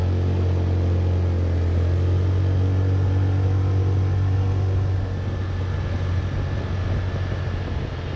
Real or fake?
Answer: real